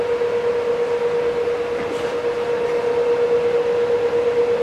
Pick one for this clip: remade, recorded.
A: recorded